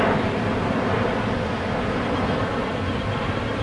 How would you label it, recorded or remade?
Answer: recorded